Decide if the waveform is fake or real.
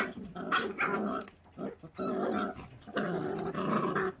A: real